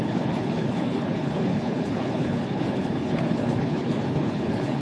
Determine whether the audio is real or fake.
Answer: fake